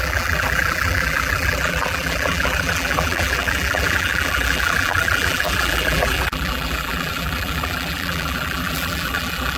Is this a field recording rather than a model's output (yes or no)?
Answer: no